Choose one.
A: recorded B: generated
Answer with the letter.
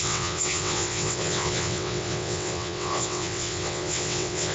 B